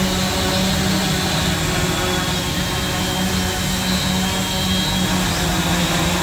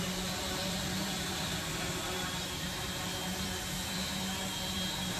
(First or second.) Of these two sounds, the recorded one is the first